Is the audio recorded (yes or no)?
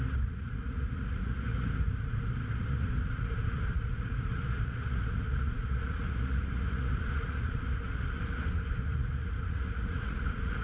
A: no